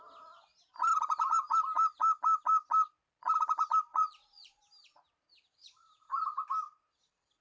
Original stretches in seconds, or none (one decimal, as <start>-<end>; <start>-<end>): 0.0-3.9; 4.6-7.4